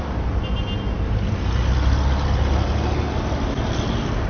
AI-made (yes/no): no